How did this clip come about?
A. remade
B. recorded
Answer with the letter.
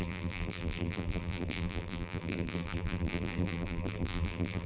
A